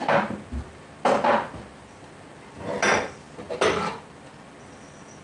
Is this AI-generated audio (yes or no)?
no